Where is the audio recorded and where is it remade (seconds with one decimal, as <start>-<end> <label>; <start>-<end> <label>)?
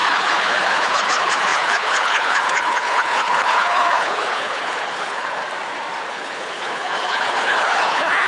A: 0.0-5.4 remade; 5.4-6.1 recorded; 6.1-8.3 remade